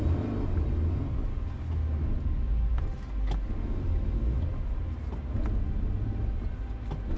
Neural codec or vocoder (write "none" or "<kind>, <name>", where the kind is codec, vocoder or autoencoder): none